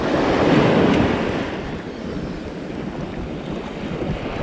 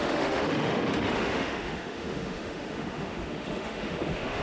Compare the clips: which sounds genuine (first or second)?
first